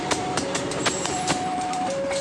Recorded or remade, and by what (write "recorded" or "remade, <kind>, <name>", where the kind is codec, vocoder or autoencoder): remade, vocoder, BigVGAN v2